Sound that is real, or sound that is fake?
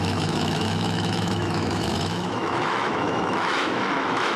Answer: fake